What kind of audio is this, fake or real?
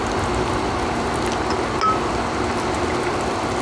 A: real